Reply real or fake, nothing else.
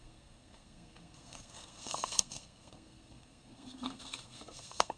fake